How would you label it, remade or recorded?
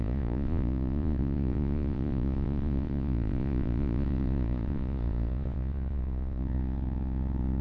remade